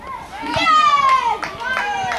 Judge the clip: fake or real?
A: real